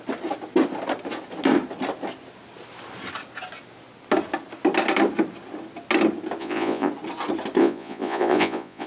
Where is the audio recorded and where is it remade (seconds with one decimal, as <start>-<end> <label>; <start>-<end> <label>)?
0.0-6.4 recorded; 6.4-6.9 remade; 6.9-7.6 recorded; 7.6-8.9 remade